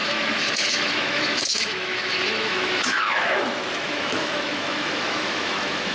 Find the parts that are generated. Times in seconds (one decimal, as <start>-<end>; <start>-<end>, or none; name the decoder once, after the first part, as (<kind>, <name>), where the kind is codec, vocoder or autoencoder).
0.0-5.9 (autoencoder, DAC-VAE)